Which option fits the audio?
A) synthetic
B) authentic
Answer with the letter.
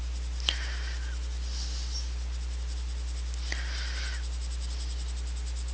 B